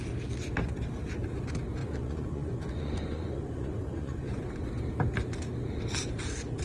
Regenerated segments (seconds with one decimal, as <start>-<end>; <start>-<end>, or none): 1.8-4.4